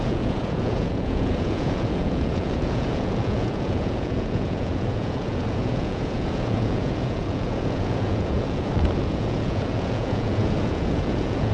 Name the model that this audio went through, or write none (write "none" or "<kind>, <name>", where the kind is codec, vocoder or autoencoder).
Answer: vocoder, Vocos